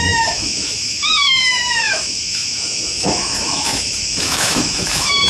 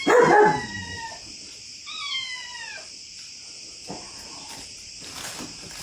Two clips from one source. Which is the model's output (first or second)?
first